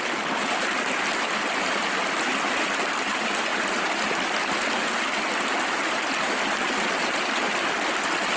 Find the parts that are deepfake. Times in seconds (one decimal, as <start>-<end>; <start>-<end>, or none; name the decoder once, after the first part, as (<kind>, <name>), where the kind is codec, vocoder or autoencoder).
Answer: none